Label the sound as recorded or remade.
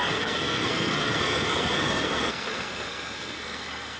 remade